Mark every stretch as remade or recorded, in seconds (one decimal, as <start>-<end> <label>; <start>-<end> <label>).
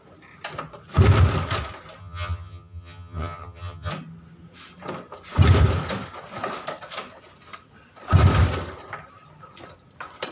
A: 0.0-2.0 recorded; 2.0-3.9 remade; 3.9-10.3 recorded